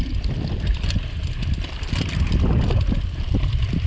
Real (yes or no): yes